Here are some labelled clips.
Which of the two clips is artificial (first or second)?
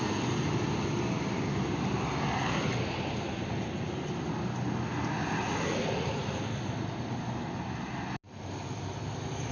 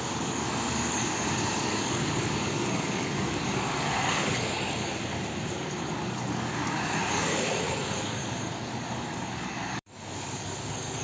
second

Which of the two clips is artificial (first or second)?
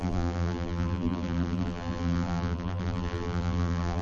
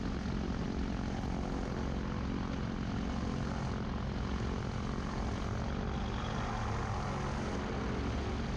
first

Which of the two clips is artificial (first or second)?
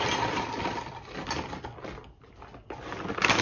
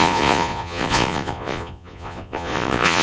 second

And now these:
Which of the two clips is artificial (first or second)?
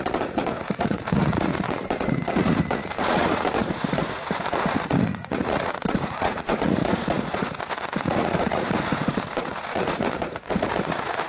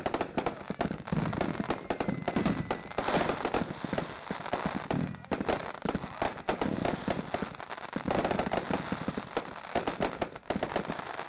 first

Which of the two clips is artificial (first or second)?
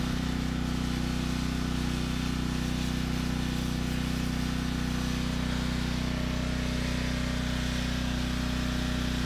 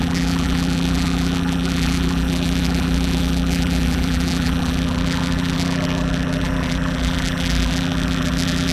second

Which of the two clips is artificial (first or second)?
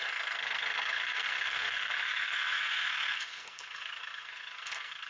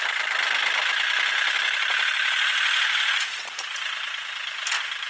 first